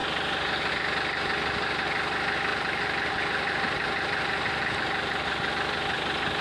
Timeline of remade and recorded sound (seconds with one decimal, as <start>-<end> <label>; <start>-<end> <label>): 0.0-2.5 recorded; 2.5-5.5 remade; 5.5-6.4 recorded